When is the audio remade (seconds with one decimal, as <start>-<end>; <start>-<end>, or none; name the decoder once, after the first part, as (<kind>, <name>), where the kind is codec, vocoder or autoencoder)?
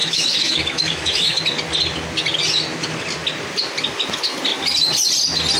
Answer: 0.0-1.4 (autoencoder, DAC-VAE)